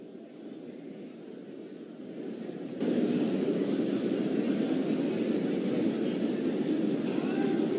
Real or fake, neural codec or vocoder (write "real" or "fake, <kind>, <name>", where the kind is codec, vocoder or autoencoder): real